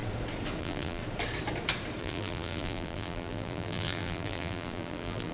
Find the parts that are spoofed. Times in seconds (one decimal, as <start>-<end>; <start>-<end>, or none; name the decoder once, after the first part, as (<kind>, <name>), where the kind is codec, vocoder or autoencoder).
0.6-1.0 (vocoder, BigVGAN v2); 2.0-5.3